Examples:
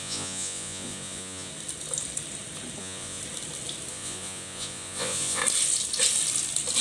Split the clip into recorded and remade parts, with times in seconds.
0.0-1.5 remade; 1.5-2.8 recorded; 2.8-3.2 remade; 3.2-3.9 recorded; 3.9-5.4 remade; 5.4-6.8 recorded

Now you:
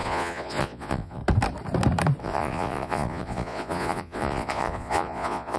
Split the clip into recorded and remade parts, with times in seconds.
0.0-1.2 remade; 1.2-2.2 recorded; 2.2-5.6 remade

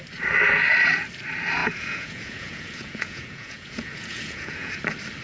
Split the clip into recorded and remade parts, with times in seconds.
0.0-1.6 recorded; 1.6-4.7 remade; 4.7-5.2 recorded

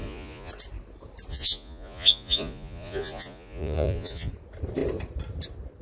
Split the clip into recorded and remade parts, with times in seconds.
0.0-0.5 remade; 0.5-1.3 recorded; 1.3-4.3 remade; 4.3-5.8 recorded

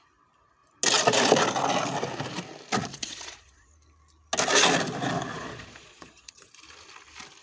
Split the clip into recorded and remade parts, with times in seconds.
0.0-2.9 recorded; 2.9-3.7 remade; 3.7-5.3 recorded; 5.3-6.5 remade; 6.5-7.4 recorded

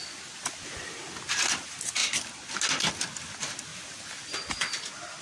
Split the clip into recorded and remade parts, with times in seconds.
0.0-5.2 recorded

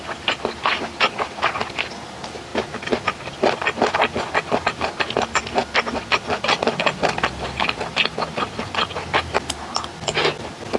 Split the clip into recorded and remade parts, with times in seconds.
0.0-10.8 recorded

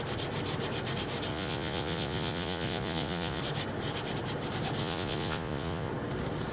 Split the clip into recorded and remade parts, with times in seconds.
0.0-1.3 recorded; 1.3-3.4 remade; 3.4-4.8 recorded; 4.8-5.9 remade; 5.9-6.5 recorded